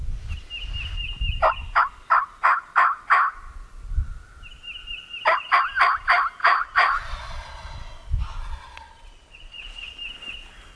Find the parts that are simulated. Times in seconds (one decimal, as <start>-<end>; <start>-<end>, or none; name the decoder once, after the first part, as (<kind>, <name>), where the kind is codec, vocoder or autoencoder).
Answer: 6.4-7.7 (vocoder, Vocos); 8.4-9.9